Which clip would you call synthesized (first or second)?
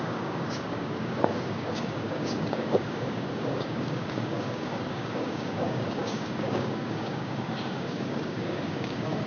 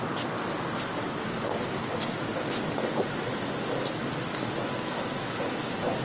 first